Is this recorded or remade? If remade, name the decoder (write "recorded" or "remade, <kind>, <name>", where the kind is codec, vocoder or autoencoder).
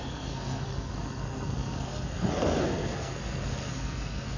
remade, codec, SNAC